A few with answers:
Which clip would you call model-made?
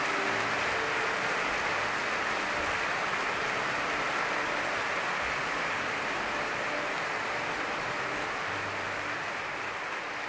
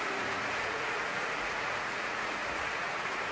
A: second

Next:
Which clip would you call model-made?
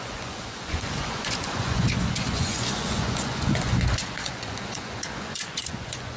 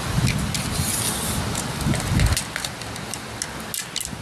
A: first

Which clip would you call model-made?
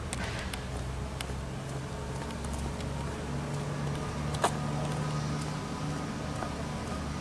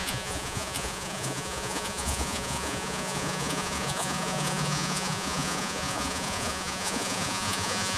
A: second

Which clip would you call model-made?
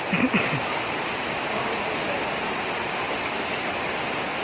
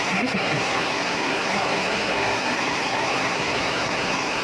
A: second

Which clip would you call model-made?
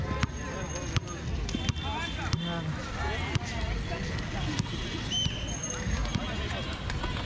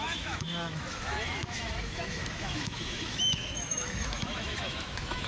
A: second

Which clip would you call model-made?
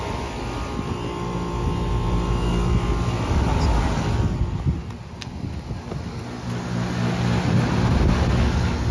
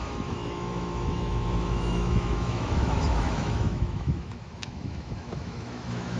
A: second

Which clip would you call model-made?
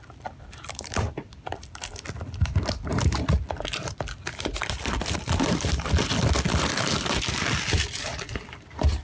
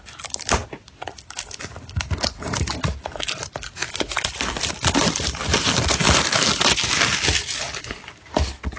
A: first